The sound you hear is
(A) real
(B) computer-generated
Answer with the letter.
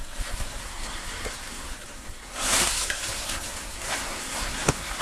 B